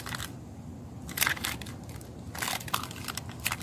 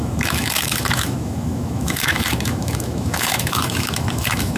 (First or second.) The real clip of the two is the first